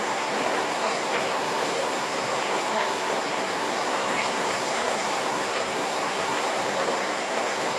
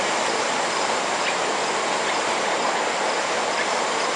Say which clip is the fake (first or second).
first